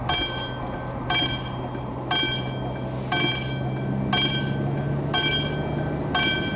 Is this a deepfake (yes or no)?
no